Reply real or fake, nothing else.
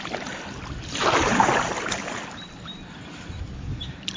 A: real